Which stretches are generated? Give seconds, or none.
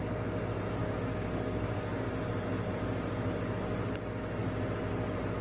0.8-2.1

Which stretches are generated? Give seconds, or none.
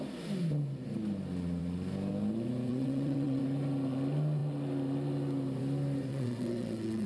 2.7-3.4; 6.1-7.1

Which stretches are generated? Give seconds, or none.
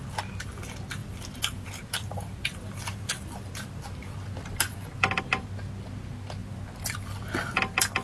1.0-5.2; 6.4-7.2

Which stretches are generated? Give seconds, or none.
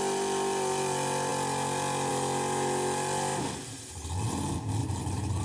4.8-5.4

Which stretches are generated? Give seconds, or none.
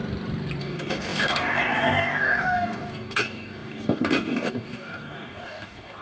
0.6-6.0